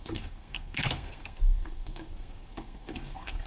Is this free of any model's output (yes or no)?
no